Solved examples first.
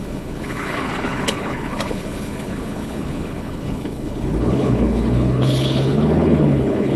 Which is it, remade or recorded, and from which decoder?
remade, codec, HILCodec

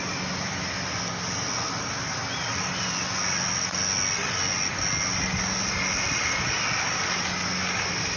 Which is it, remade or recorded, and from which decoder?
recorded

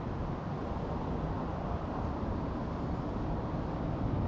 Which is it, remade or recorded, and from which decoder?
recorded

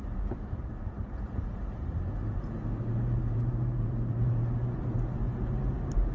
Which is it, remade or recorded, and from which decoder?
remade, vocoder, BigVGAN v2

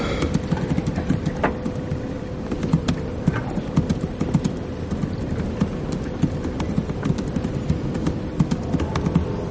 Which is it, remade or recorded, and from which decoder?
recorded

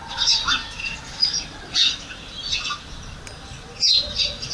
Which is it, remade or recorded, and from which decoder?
recorded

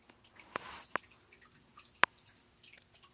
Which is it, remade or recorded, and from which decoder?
recorded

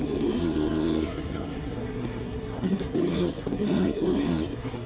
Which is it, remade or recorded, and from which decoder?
remade, codec, SNAC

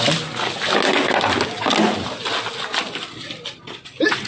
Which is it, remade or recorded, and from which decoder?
recorded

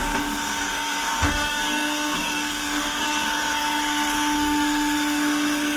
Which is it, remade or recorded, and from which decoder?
remade, codec, SNAC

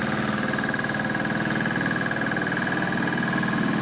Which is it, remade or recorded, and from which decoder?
recorded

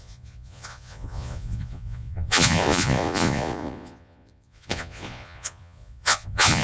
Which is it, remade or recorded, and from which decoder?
remade, vocoder, Vocos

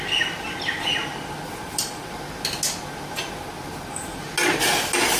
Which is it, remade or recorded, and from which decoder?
recorded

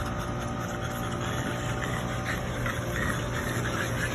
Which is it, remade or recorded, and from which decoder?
recorded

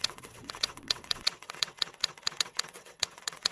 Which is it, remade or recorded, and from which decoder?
remade, vocoder, WaveNeXt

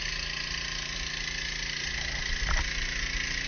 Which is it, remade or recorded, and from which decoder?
recorded